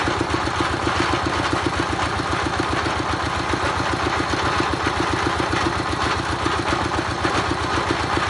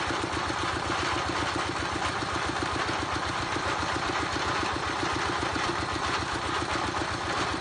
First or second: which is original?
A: first